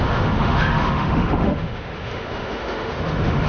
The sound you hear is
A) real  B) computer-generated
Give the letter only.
B